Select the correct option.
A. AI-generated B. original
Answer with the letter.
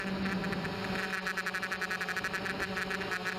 B